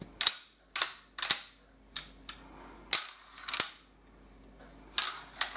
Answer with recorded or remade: recorded